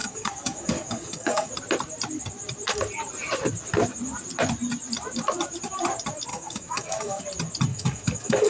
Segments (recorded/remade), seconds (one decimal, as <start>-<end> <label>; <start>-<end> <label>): 0.0-1.5 remade; 1.5-6.3 recorded; 6.3-7.2 remade; 7.2-7.7 recorded; 7.7-8.5 remade